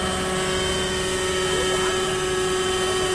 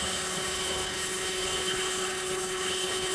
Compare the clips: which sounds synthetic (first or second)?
second